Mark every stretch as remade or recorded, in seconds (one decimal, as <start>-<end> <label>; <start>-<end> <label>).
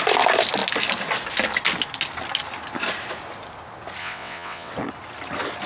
0.0-4.0 recorded; 4.0-4.7 remade; 4.7-5.7 recorded